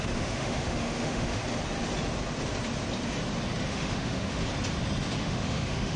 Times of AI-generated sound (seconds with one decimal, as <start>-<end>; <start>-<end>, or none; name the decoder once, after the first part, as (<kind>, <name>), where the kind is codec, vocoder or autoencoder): 0.0-1.4 (autoencoder, DAC-VAE); 3.7-4.4; 5.2-6.0